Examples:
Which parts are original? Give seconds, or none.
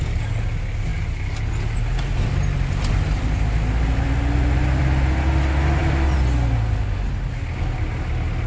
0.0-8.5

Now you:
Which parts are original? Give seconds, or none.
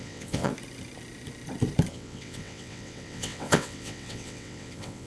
0.5-1.9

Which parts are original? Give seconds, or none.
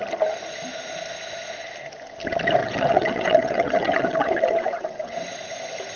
0.0-2.6; 5.2-6.0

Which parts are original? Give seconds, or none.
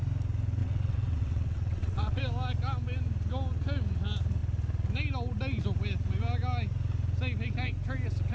0.0-0.6; 2.2-8.3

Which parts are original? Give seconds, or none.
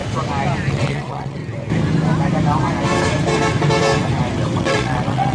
0.0-0.7; 1.4-4.6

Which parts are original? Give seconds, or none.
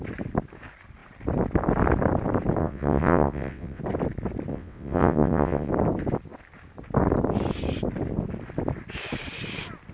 0.0-2.6; 3.8-4.5; 5.7-9.9